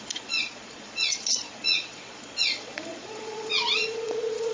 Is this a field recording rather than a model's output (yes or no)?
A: no